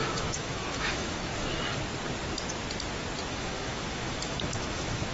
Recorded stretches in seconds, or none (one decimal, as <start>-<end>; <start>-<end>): 1.3-3.3